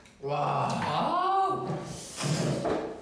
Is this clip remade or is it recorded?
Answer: recorded